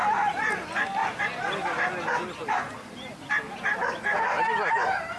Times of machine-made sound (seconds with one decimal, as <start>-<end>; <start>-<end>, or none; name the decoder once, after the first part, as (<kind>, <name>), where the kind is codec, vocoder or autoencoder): none